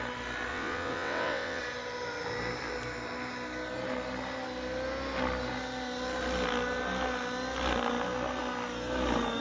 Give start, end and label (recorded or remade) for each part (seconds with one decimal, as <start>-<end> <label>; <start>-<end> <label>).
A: 0.0-0.5 recorded; 0.5-1.6 remade; 1.6-9.4 recorded